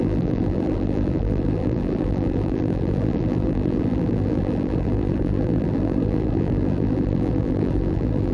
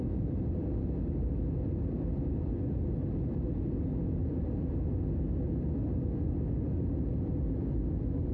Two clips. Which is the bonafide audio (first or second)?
second